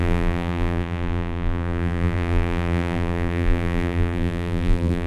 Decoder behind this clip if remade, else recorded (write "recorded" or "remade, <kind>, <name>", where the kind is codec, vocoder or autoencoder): remade, vocoder, BigVGAN v2